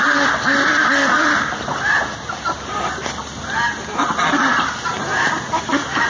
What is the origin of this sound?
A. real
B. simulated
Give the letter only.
A